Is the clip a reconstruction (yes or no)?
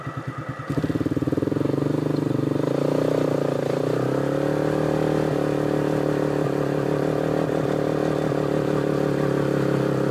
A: no